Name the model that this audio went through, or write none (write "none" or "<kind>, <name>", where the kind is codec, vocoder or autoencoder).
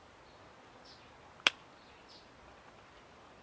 none